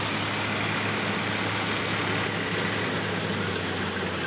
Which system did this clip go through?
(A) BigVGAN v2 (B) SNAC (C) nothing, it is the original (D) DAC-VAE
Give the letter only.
C